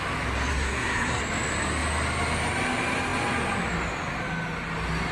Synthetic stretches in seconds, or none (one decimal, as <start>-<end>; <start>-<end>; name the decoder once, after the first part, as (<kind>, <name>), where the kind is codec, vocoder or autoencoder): 0.5-1.2 (codec, SNAC)